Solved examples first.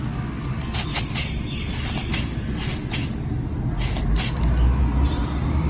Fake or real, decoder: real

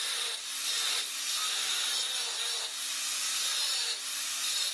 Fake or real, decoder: real